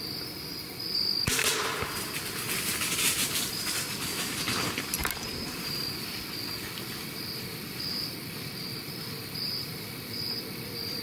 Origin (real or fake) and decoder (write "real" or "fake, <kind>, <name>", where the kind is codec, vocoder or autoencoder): fake, vocoder, BigVGAN v2